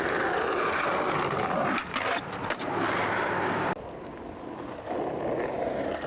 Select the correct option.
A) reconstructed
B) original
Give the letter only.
B